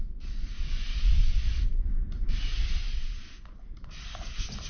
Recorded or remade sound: recorded